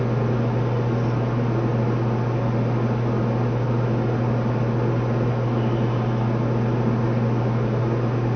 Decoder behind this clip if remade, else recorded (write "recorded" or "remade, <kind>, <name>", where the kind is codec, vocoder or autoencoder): recorded